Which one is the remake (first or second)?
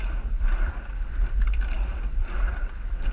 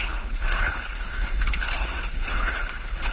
second